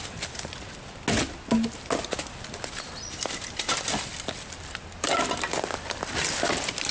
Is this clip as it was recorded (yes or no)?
yes